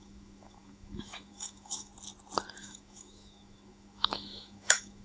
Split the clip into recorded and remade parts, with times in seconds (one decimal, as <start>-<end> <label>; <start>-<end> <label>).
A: 0.0-1.9 remade; 1.9-2.6 recorded; 2.6-5.0 remade